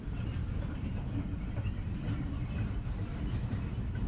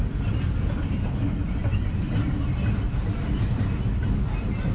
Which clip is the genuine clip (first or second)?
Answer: second